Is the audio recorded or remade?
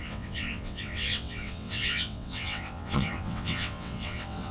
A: remade